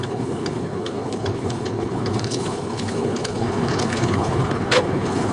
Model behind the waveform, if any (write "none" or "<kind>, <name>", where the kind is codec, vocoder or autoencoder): codec, HILCodec